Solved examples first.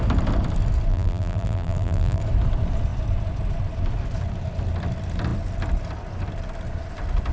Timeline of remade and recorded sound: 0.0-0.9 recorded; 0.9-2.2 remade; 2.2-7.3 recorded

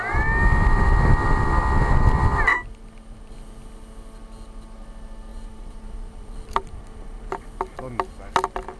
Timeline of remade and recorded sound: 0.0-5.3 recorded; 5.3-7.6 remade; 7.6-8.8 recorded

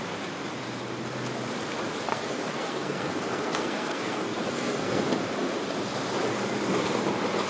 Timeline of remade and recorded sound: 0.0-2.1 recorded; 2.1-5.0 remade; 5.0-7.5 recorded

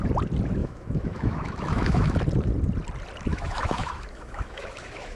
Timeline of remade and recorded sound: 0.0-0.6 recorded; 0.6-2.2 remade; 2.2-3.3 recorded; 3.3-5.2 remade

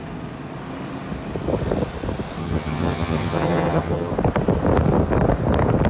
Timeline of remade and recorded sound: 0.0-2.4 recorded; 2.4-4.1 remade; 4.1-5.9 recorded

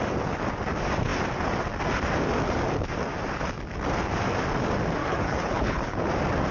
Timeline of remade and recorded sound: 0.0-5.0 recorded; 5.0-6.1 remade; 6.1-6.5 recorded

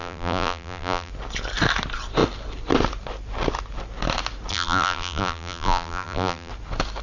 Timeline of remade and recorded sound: 0.0-1.1 remade; 1.1-4.5 recorded; 4.5-6.5 remade; 6.5-7.0 recorded